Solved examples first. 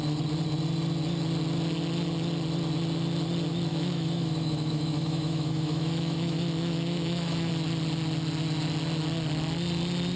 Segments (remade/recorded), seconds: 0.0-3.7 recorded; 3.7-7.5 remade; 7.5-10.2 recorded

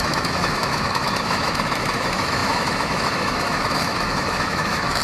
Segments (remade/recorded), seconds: 0.0-5.0 remade

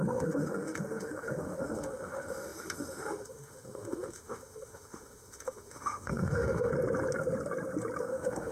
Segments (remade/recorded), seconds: 0.0-6.7 remade; 6.7-8.0 recorded; 8.0-8.5 remade

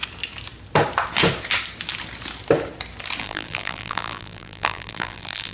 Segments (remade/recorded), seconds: 0.0-3.2 recorded; 3.2-5.5 remade

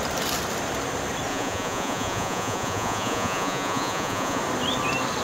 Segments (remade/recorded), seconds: 0.0-1.3 recorded; 1.3-4.4 remade; 4.4-5.2 recorded

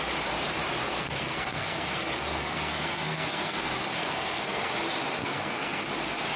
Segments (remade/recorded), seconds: 0.0-0.9 recorded; 0.9-4.7 remade; 4.7-5.2 recorded; 5.2-5.9 remade; 5.9-6.4 recorded

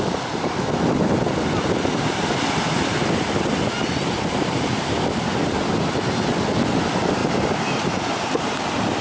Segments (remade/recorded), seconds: 0.0-7.2 recorded; 7.2-8.6 remade; 8.6-9.0 recorded

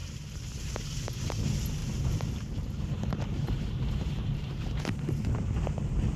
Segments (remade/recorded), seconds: 0.0-0.7 remade; 0.7-1.8 recorded; 1.8-5.3 remade; 5.3-6.2 recorded